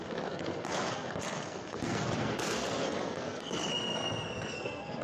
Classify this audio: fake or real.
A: fake